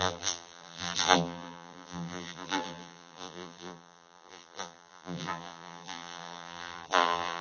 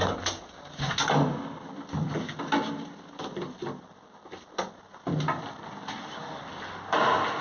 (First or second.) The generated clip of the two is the first